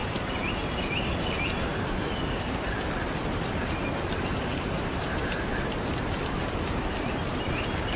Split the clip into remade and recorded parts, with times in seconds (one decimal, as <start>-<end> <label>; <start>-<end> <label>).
0.0-5.5 remade; 5.5-6.3 recorded; 6.3-8.0 remade